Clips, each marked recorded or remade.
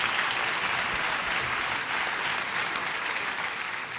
recorded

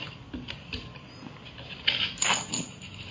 recorded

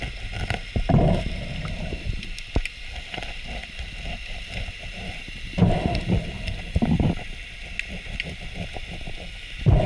recorded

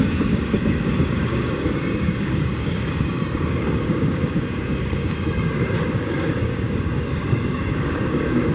remade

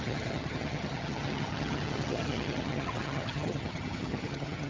remade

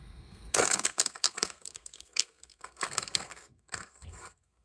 remade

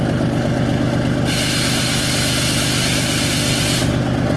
recorded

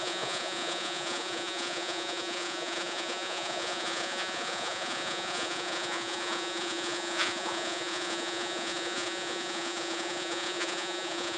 remade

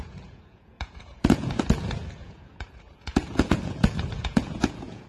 remade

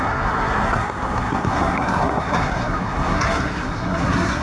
remade